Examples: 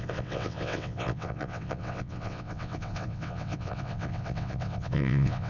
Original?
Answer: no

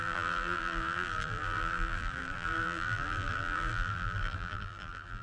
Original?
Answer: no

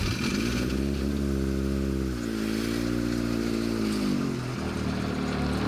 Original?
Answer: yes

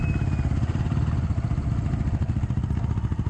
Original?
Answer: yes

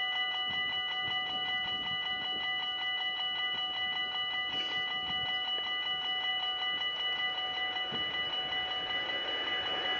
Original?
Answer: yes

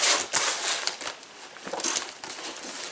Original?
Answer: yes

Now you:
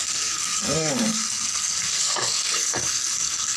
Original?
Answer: no